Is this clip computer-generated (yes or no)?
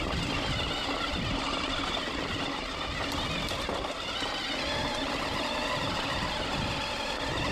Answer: no